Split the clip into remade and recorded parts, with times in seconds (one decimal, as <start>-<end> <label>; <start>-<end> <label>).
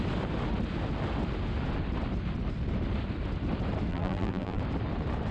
0.0-3.9 recorded; 3.9-4.6 remade; 4.6-5.3 recorded